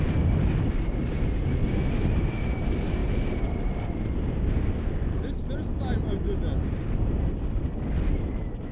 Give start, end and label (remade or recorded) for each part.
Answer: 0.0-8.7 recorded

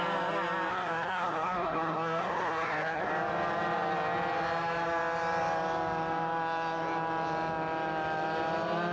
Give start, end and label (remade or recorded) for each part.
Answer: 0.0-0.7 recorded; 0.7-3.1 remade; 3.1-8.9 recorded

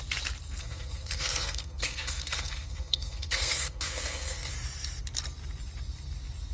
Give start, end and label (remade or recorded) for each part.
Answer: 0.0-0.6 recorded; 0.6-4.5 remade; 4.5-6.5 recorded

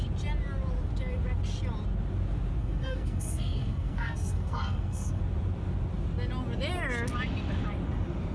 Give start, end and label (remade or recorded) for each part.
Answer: 0.0-2.6 recorded; 2.6-5.2 remade; 5.2-8.3 recorded

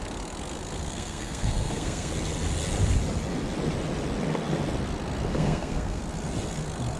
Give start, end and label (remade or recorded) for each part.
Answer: 0.0-0.9 recorded; 0.9-2.1 remade; 2.1-5.3 recorded; 5.3-6.0 remade; 6.0-7.0 recorded

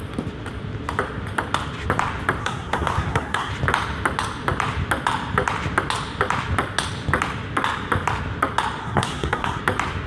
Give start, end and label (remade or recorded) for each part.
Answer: 0.0-2.4 recorded; 2.4-3.5 remade; 3.5-8.8 recorded; 8.8-9.6 remade; 9.6-10.1 recorded

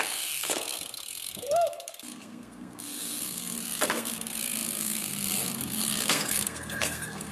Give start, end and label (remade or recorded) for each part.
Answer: 0.0-7.3 remade

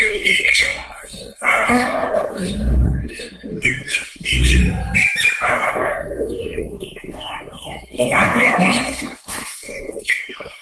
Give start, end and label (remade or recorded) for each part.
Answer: 0.0-4.6 remade; 4.6-5.5 recorded; 5.5-10.6 remade